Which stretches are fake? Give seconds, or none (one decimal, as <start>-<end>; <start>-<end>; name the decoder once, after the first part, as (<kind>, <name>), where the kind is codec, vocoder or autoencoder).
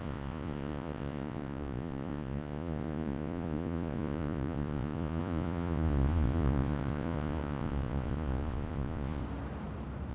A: 0.0-9.2 (vocoder, Vocos)